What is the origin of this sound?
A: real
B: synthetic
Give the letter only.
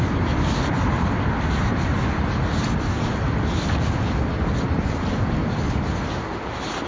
A